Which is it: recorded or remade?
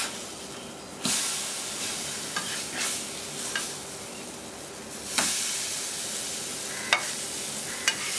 recorded